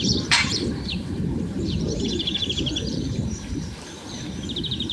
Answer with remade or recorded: remade